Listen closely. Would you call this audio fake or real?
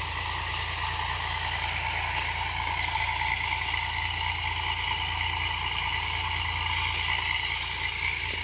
real